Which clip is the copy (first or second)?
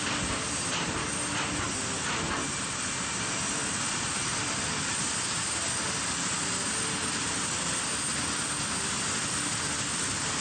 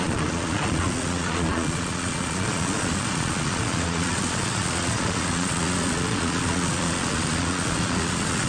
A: second